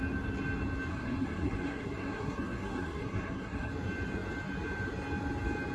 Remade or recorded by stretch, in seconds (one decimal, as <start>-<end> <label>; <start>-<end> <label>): 0.0-0.9 recorded; 0.9-3.7 remade; 3.7-5.7 recorded